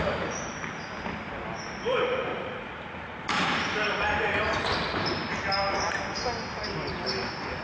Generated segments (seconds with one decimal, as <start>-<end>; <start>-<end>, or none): 2.3-3.2